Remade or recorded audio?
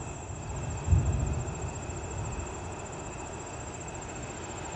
recorded